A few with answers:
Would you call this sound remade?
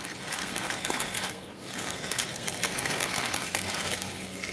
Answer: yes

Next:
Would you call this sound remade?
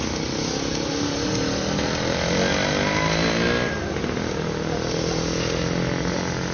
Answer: no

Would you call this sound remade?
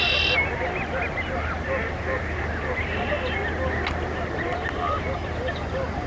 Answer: no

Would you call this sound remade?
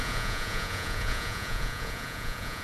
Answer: yes